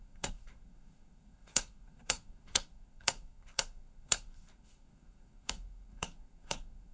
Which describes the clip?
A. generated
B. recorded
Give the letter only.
A